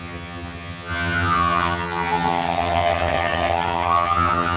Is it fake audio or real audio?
fake